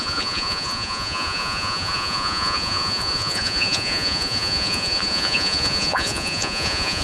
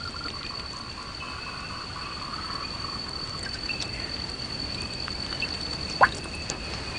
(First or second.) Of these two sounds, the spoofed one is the first